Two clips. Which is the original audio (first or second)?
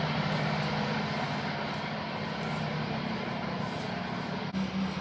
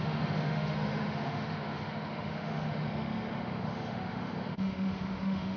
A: first